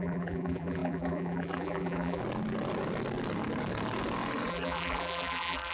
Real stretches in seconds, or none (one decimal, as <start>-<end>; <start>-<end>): 2.2-4.5